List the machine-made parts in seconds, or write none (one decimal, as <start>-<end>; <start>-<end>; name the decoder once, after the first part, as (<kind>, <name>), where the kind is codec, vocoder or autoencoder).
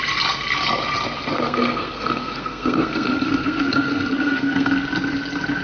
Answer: 1.3-4.7 (codec, SNAC)